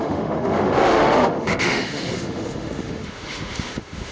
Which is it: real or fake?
fake